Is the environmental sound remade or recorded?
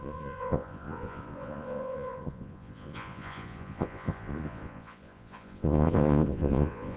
remade